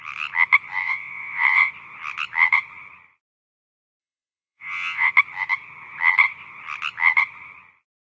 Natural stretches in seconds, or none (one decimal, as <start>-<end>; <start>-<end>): 0.0-0.8; 1.7-4.0; 5.1-8.2